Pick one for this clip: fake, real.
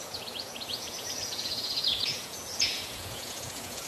fake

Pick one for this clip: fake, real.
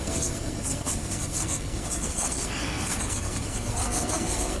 fake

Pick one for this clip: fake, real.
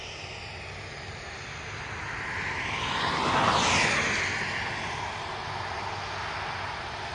real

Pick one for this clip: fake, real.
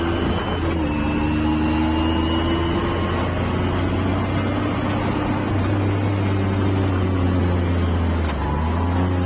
real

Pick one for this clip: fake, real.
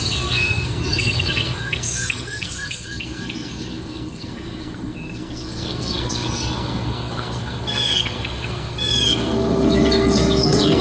fake